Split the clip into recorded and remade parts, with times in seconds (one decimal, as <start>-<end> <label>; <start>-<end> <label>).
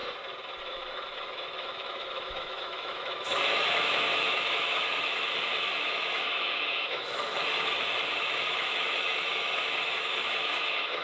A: 0.0-0.6 recorded; 0.6-11.0 remade